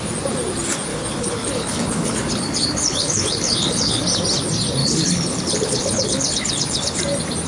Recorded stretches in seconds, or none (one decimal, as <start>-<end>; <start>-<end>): 0.0-0.9; 4.0-4.8; 7.0-7.5